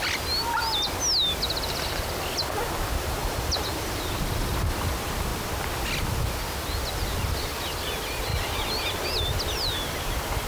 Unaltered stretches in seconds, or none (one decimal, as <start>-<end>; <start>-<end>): 0.0-3.2; 4.1-8.3; 10.1-10.5